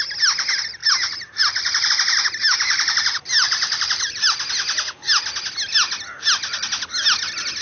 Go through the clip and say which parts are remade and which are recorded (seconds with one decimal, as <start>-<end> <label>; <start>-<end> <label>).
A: 0.0-0.8 recorded; 0.8-1.9 remade; 1.9-2.4 recorded; 2.4-4.3 remade; 4.3-7.6 recorded